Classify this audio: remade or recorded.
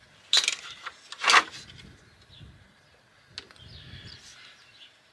recorded